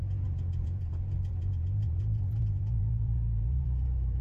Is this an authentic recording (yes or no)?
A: no